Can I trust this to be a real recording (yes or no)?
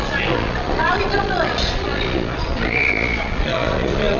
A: no